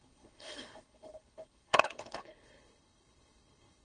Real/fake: fake